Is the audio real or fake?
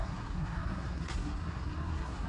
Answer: fake